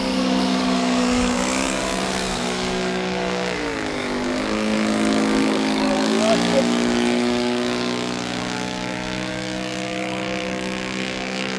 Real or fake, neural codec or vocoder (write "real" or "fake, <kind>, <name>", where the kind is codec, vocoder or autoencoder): fake, codec, DAC